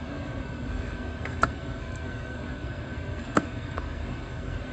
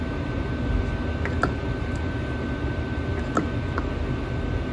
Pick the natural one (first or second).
second